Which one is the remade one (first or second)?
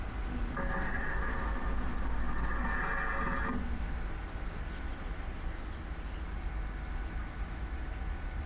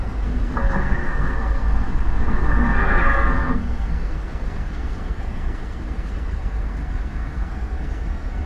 second